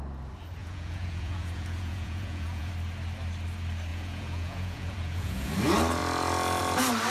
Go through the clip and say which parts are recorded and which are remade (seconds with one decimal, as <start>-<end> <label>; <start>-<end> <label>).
0.0-0.6 recorded; 0.6-2.7 remade; 2.7-3.9 recorded; 3.9-5.5 remade; 5.5-7.1 recorded